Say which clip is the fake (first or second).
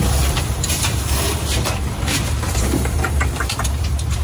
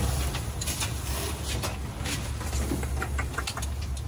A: first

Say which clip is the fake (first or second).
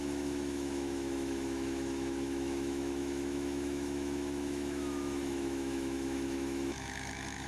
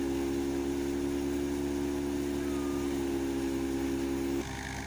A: first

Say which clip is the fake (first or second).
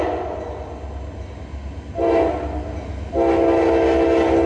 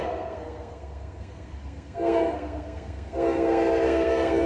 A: second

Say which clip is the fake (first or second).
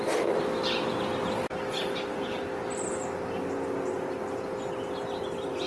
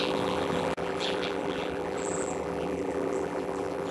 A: second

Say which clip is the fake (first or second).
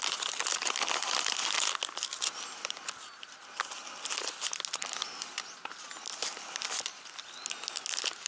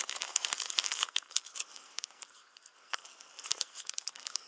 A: second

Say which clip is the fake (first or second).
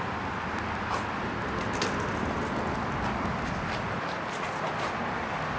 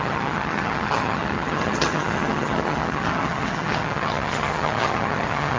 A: second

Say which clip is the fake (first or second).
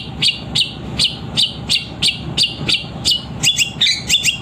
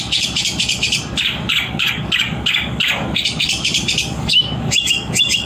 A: second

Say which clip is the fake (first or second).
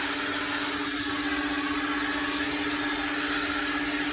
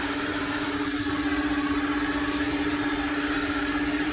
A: second